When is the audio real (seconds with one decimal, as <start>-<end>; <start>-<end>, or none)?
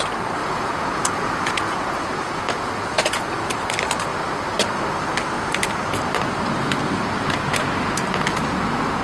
0.0-0.4; 3.2-9.0